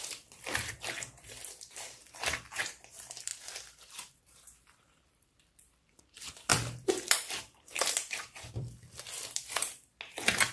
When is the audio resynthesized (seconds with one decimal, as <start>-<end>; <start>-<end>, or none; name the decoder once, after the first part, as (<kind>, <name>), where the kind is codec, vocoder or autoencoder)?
0.0-3.3 (vocoder, BigVGAN v2); 4.2-9.9